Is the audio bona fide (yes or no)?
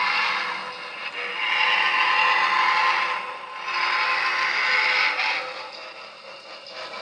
yes